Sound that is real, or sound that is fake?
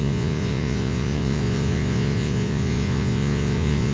fake